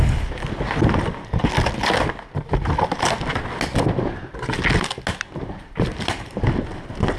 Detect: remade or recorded recorded